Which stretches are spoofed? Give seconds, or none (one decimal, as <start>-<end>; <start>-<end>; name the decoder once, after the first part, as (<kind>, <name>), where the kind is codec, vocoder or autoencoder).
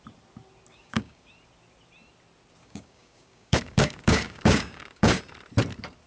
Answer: 0.7-1.3 (codec, DAC); 2.6-5.2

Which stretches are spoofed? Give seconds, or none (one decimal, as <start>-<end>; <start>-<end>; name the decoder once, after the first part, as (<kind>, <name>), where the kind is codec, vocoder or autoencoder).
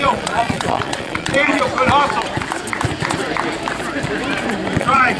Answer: 0.0-1.7 (vocoder, Vocos); 4.8-5.2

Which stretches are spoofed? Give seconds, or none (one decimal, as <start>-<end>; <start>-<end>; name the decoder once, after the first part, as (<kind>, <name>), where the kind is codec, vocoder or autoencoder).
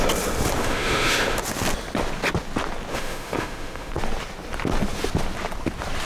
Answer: 0.6-1.4 (autoencoder, DAC-VAE); 2.9-3.9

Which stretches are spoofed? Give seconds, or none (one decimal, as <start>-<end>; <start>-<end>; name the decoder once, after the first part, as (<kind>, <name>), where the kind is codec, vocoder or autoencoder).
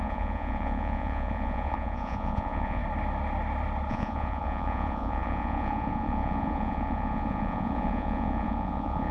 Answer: 0.0-2.8 (vocoder, Vocos); 3.9-9.1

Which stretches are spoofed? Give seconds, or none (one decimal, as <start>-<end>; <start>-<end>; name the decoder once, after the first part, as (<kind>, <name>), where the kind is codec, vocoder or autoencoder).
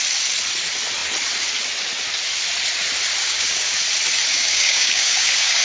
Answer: 3.2-3.8 (codec, DAC); 4.3-5.6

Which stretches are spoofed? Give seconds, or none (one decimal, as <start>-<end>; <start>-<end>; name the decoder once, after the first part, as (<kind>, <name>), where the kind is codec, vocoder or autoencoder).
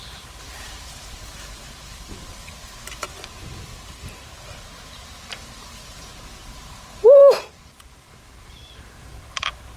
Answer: 0.0-9.8 (vocoder, BigVGAN v2)